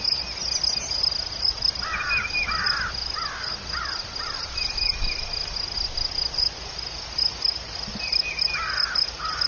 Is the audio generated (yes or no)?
no